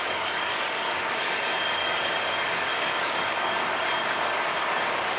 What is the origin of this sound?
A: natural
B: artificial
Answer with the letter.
B